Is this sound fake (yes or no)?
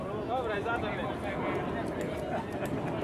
no